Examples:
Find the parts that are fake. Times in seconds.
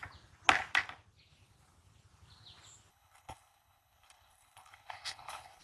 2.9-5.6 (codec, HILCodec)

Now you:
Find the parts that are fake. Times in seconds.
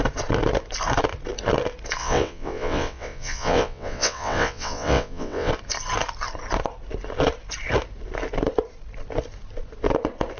2.0-5.5 (vocoder, WaveNeXt)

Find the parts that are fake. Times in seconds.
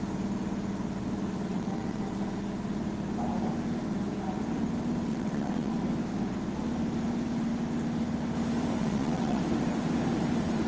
1.5-2.0 (vocoder, WaveNeXt); 5.1-5.7; 8.8-9.4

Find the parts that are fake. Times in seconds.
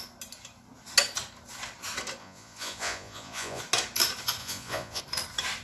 2.2-3.6 (vocoder, Vocos); 4.4-5.0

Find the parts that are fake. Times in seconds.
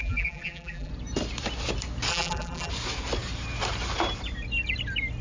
0.0-0.9 (vocoder, BigVGAN v2); 2.1-2.7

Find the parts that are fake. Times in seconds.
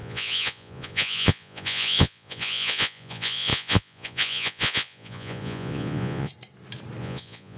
0.0-6.3 (vocoder, Vocos); 7.0-7.6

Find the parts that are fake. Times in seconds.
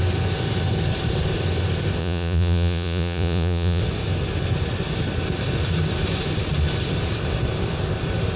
2.0-3.8 (vocoder, Vocos)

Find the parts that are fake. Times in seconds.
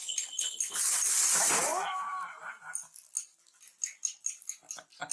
none